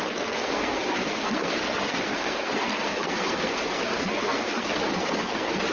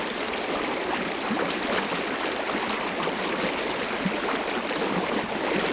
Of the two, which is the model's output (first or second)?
first